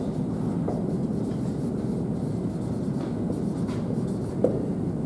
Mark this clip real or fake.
real